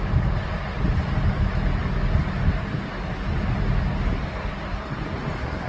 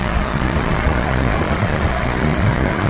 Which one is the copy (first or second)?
second